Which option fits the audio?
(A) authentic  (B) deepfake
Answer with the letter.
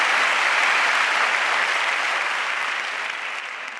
A